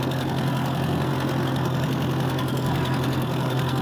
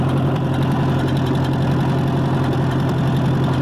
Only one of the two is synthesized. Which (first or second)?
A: first